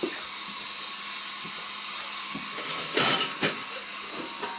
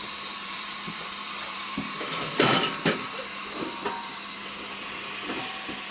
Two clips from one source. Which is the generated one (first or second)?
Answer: second